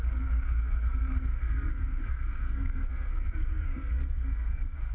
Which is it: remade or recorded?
remade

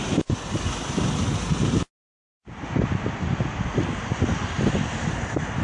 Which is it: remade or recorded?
recorded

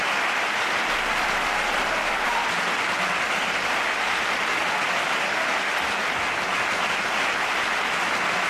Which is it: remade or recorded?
recorded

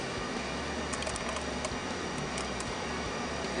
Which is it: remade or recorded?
recorded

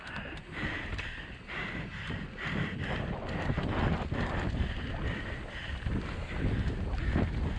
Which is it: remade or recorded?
recorded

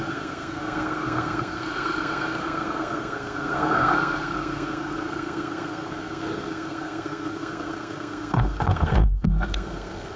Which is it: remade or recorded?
remade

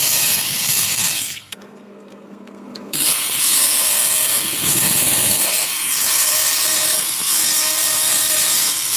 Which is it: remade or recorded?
remade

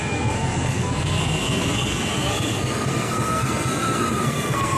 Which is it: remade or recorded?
remade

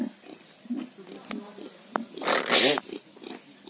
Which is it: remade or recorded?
recorded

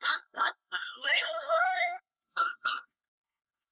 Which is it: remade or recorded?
remade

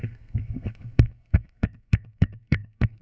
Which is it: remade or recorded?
remade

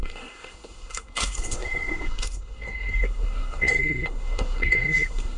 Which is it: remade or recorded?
remade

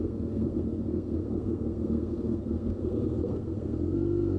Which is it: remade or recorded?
remade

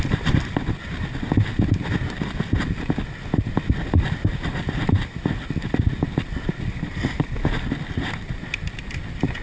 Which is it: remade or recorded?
recorded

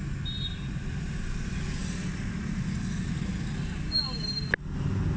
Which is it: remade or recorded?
recorded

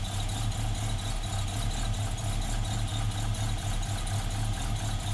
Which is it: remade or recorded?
recorded